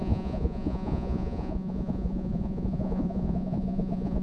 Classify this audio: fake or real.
fake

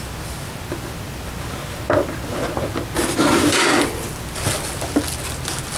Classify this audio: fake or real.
real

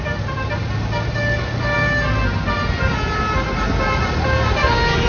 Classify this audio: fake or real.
real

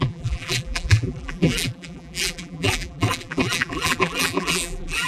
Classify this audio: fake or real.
fake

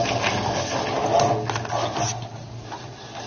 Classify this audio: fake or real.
real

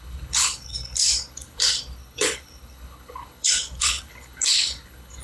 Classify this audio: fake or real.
fake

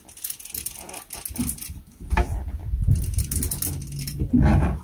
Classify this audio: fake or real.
real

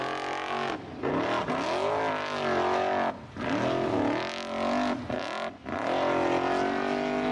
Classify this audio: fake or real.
real